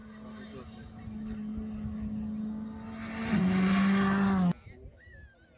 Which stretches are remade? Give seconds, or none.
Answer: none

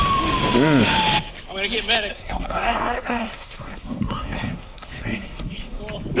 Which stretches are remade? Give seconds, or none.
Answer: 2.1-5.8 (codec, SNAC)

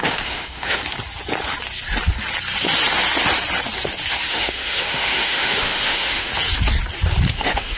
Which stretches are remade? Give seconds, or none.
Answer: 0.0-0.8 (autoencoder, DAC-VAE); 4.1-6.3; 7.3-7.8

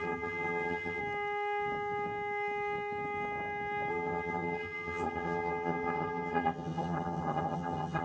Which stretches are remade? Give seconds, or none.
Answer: 0.0-1.0 (vocoder, HiFi-GAN); 3.9-8.0